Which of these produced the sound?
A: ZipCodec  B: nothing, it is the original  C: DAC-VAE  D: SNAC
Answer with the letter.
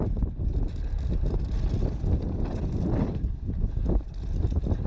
B